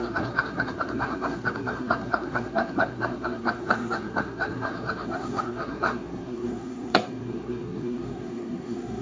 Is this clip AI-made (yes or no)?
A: yes